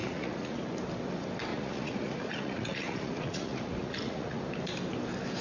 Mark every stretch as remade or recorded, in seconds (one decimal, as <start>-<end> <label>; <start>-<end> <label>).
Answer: 0.0-0.6 remade; 0.6-1.5 recorded; 1.5-4.4 remade; 4.4-5.4 recorded